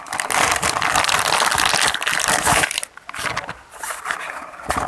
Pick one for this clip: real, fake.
real